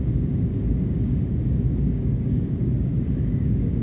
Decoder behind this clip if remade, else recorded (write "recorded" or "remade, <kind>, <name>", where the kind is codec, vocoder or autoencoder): remade, codec, DAC